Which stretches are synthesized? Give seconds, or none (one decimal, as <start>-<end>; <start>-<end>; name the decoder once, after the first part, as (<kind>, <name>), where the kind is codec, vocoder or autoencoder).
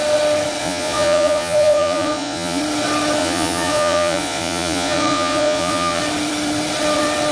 0.6-2.6 (vocoder, Vocos); 3.2-6.0